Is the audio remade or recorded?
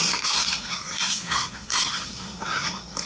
remade